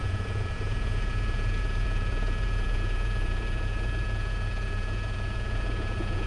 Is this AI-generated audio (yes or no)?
yes